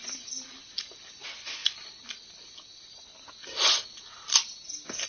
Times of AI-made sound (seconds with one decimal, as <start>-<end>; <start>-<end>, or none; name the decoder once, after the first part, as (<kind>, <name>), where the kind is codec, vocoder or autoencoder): none